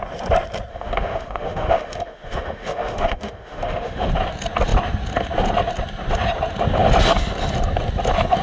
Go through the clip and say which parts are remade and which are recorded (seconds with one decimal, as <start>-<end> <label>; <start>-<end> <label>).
0.0-0.7 recorded; 0.7-4.1 remade; 4.1-8.4 recorded